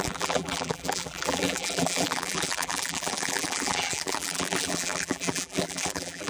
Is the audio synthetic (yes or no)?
yes